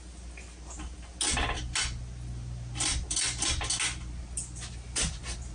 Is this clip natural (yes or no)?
yes